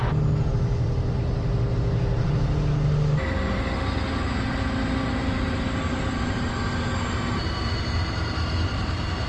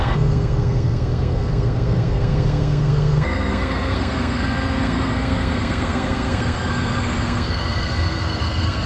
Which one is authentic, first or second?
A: first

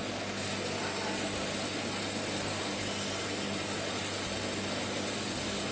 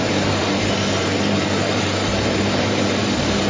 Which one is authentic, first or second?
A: first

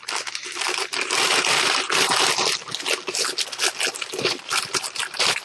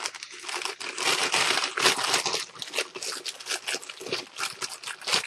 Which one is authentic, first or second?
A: second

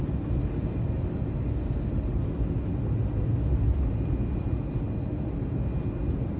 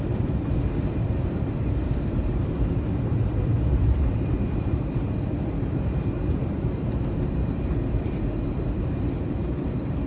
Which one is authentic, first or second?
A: first